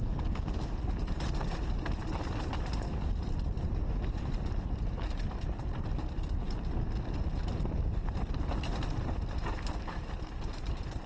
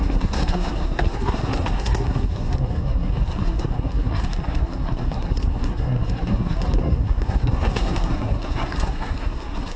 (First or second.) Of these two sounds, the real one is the first